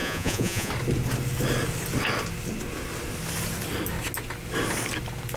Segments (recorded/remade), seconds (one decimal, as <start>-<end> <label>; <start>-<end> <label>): 0.0-0.7 remade; 0.7-5.4 recorded